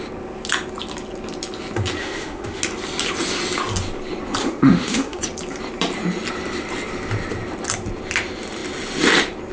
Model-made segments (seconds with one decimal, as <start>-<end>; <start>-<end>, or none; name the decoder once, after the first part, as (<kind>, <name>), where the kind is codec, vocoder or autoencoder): 2.0-2.6 (autoencoder, DAC-VAE); 4.4-5.2